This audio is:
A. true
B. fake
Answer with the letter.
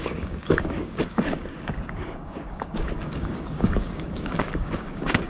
B